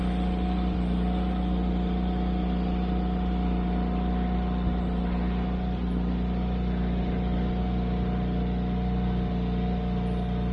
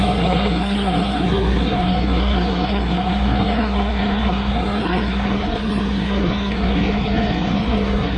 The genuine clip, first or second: first